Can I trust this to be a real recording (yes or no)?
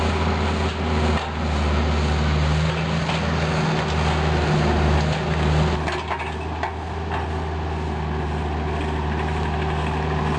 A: yes